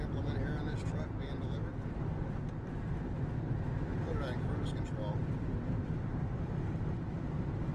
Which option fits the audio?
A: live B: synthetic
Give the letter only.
A